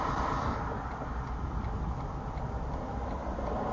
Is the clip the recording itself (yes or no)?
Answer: yes